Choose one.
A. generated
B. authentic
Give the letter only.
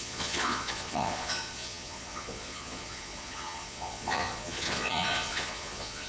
A